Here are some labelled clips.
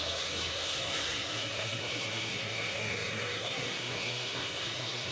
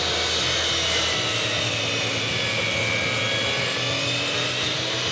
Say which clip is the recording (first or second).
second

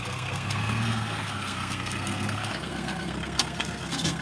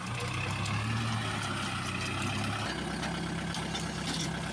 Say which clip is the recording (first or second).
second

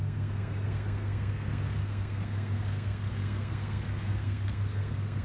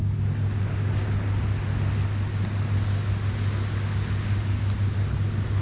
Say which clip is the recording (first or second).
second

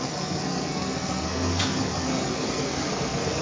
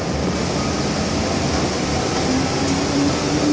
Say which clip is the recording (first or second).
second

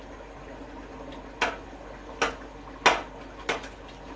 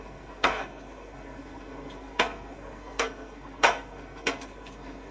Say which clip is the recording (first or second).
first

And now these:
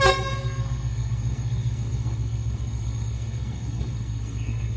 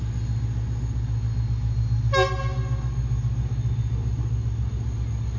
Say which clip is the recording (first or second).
second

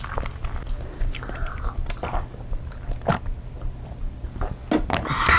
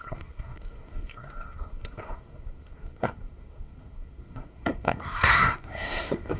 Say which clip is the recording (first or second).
first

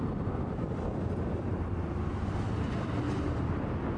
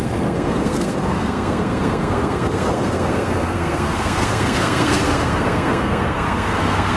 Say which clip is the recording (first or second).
first